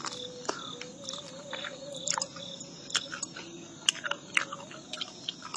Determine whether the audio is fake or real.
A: real